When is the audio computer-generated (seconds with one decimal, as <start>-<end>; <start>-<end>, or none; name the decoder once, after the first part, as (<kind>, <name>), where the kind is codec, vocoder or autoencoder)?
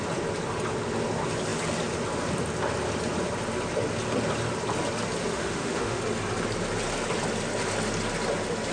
5.3-6.0 (autoencoder, DAC-VAE)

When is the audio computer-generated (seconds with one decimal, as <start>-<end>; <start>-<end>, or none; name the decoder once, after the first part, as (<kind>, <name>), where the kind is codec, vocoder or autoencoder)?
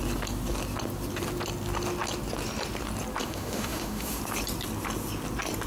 3.2-4.2 (autoencoder, DAC-VAE)